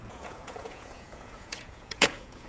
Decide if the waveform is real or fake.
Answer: fake